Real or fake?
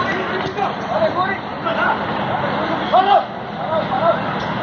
real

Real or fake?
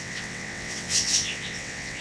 fake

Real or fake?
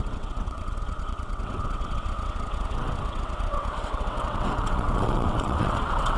fake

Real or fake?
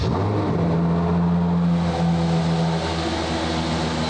real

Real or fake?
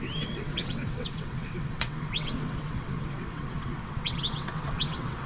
fake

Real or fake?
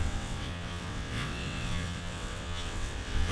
fake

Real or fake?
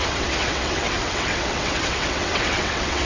fake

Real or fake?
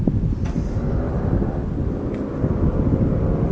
real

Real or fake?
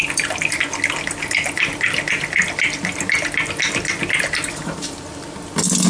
real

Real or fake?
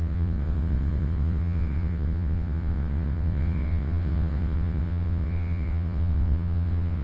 fake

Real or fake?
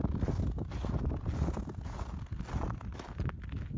real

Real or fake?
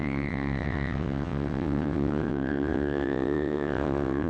fake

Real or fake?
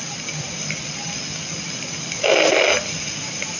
real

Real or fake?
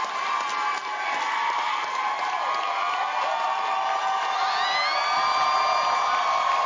real